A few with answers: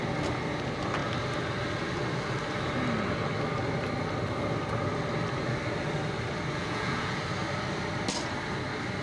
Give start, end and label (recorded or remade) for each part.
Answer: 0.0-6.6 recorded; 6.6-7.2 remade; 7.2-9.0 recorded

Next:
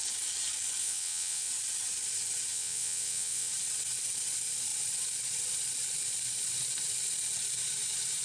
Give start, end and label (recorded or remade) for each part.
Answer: 0.0-0.8 recorded; 0.8-1.5 remade; 1.5-2.5 recorded; 2.5-3.5 remade; 3.5-8.2 recorded

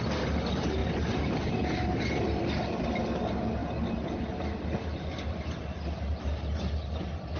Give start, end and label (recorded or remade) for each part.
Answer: 0.0-7.4 recorded

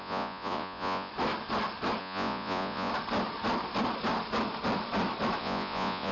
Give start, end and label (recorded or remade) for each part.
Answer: 0.0-1.1 remade; 1.1-2.0 recorded; 2.0-2.9 remade; 2.9-5.4 recorded; 5.4-6.1 remade